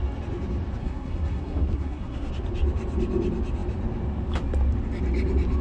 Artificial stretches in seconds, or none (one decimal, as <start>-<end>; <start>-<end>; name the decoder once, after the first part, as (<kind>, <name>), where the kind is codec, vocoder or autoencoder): 0.8-2.3 (codec, SNAC)